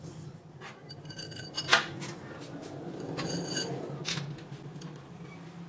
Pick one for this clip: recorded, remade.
recorded